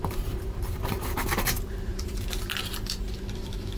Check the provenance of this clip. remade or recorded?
remade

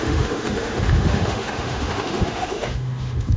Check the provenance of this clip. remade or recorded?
remade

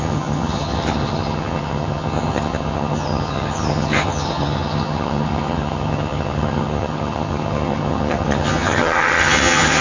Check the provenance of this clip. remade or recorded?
remade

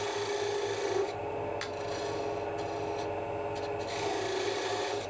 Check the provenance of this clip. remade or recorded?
recorded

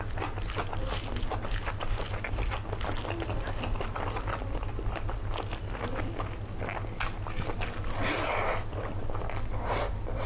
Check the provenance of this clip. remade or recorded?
recorded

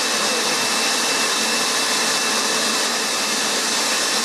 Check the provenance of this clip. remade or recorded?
recorded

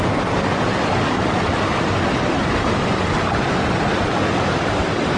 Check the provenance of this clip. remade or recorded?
recorded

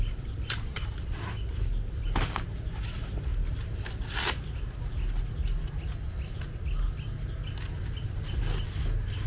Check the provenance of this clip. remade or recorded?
recorded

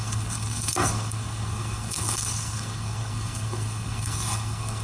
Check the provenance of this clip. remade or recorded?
remade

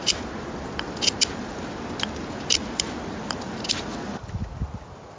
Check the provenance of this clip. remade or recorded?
recorded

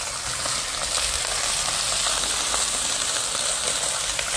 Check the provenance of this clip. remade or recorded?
recorded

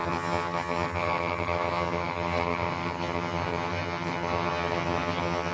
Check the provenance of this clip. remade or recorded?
remade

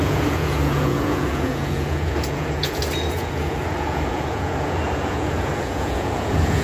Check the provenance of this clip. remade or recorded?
remade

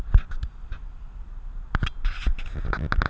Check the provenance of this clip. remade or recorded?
recorded